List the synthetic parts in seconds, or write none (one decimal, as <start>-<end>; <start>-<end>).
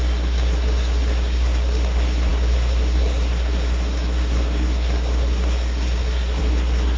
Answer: 0.0-7.0